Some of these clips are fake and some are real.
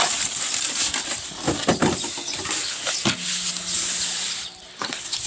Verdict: fake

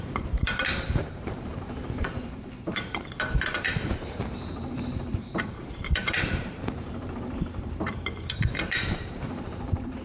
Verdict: fake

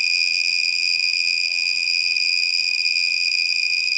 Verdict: fake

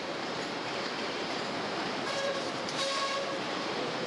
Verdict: fake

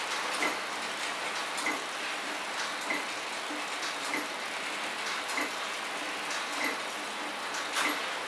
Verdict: real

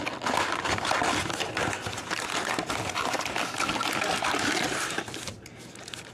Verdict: real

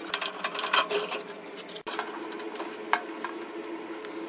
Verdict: real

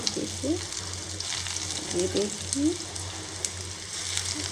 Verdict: real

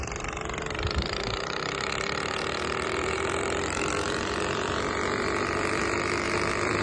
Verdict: fake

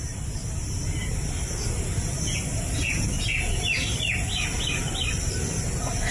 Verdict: real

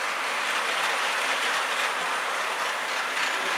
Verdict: real